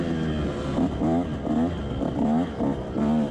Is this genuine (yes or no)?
yes